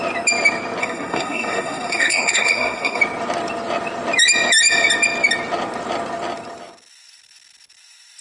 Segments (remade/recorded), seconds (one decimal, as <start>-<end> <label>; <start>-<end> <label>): 0.0-0.8 recorded; 0.8-3.0 remade; 3.0-8.2 recorded